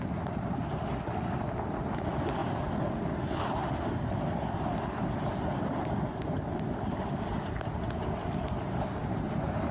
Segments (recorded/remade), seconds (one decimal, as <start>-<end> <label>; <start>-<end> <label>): 0.0-9.7 recorded